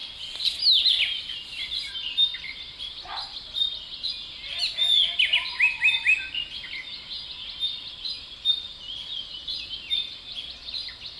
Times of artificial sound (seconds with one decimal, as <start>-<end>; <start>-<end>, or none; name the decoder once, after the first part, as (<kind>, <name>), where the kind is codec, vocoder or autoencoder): none